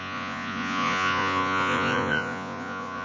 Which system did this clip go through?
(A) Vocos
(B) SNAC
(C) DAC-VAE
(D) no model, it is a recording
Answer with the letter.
A